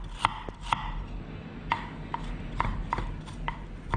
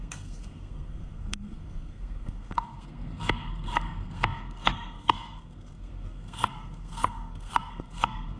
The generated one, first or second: second